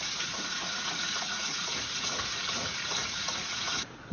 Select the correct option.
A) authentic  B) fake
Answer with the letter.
B